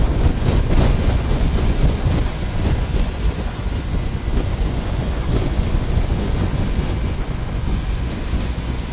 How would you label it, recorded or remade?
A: remade